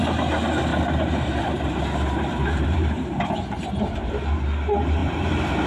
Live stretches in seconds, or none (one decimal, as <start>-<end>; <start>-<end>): 0.0-0.7; 4.1-5.0